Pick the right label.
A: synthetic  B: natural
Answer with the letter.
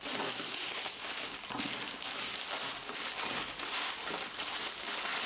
B